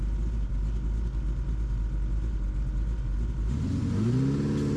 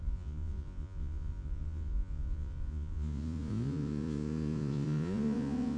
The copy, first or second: second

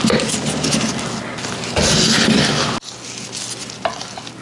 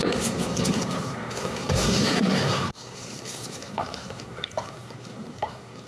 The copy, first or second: second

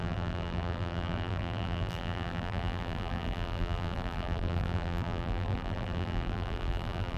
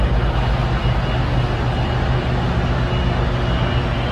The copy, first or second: first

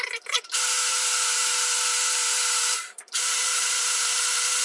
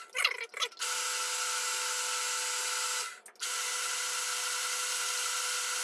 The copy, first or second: first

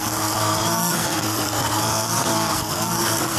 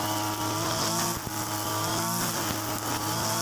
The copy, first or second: first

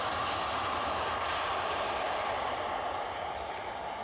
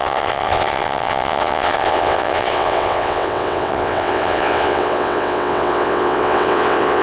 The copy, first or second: second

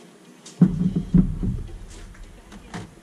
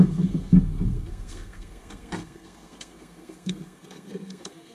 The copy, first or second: second